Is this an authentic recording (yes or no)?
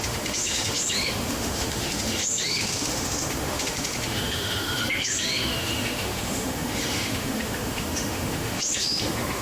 no